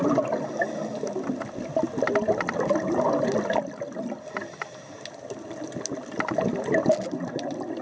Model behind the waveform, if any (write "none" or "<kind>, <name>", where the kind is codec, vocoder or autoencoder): none